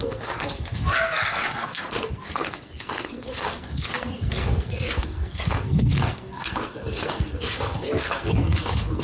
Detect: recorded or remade remade